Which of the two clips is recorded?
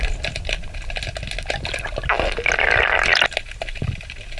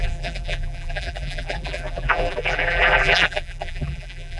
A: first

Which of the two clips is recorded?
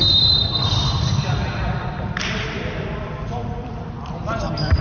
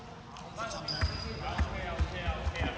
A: second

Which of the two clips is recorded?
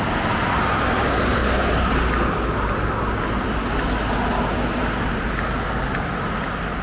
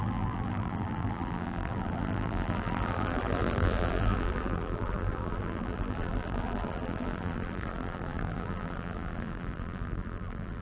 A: first